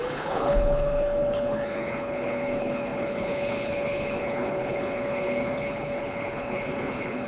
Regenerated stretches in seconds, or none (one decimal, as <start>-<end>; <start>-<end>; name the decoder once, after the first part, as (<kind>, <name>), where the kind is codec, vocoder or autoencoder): 0.0-7.3 (codec, HILCodec)